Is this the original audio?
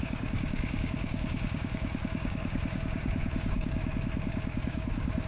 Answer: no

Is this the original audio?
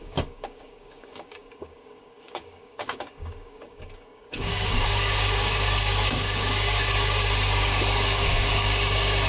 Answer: no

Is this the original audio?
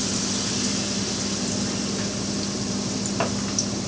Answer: yes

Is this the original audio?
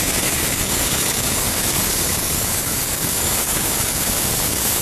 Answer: no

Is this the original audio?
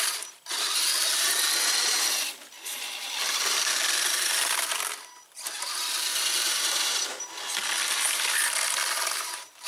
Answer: yes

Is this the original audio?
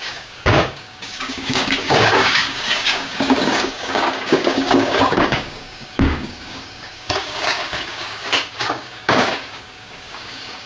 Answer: no